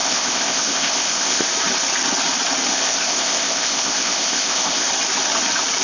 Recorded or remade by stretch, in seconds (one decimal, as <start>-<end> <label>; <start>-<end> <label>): 0.0-1.5 remade; 1.5-2.7 recorded; 2.7-4.9 remade; 4.9-5.8 recorded